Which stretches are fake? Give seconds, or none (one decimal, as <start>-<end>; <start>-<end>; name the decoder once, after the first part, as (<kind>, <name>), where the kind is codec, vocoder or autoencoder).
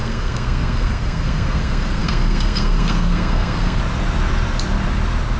0.0-3.8 (codec, SNAC)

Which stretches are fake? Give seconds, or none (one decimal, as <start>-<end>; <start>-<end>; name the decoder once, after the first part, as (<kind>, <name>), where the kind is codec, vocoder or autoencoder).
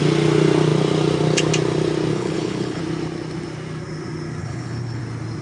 2.1-2.8 (codec, HILCodec); 4.4-5.0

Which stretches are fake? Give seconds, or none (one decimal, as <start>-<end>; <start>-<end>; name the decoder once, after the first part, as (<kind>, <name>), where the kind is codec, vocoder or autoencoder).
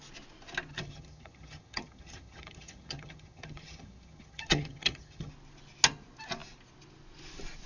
0.7-5.3 (vocoder, HiFi-GAN)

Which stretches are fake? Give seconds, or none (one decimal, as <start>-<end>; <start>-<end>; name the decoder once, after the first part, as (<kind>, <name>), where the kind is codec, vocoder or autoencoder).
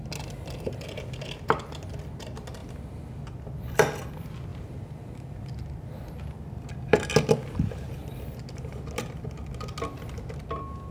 none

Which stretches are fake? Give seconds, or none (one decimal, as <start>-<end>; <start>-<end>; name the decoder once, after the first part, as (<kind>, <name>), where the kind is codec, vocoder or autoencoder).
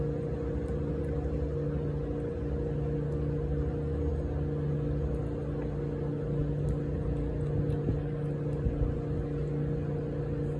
none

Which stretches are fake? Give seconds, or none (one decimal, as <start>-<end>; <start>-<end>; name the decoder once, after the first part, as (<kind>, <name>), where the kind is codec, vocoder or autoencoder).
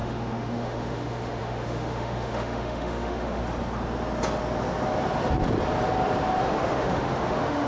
0.0-3.4 (autoencoder, DAC-VAE); 6.4-7.7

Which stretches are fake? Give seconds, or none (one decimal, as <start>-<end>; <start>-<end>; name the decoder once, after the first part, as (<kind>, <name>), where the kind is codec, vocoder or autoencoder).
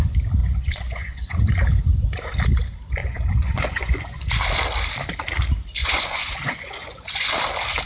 0.4-1.4 (vocoder, Vocos); 3.0-4.2; 5.8-7.3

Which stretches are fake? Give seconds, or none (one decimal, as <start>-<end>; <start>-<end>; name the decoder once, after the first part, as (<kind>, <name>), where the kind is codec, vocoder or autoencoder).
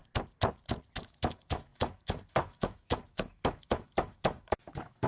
1.0-5.1 (autoencoder, DAC-VAE)